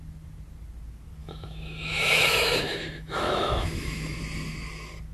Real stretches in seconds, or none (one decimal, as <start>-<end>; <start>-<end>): 0.0-1.2; 4.2-5.1